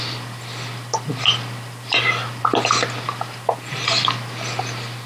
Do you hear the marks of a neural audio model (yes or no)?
no